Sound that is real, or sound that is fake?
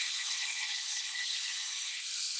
fake